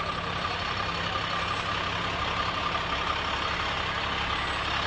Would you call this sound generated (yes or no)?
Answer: no